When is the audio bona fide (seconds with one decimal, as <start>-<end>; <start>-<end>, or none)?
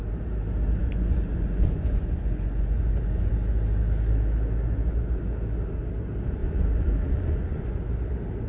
0.0-0.8; 3.3-6.4; 7.8-8.5